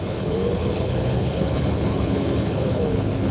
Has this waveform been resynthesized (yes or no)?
yes